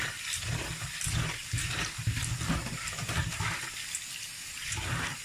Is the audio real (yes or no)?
yes